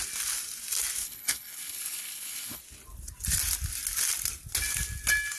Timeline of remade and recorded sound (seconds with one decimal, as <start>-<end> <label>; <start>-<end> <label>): 0.0-1.0 recorded; 1.0-2.6 remade; 2.6-5.4 recorded